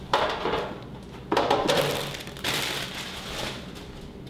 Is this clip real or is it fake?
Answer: real